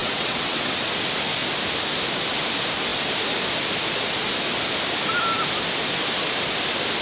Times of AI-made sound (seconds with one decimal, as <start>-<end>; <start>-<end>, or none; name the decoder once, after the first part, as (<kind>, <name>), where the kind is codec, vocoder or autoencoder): 0.0-0.8 (vocoder, WaveNeXt)